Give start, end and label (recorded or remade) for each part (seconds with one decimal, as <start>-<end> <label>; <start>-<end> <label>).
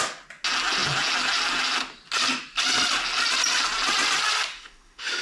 0.0-4.5 recorded; 4.5-5.2 remade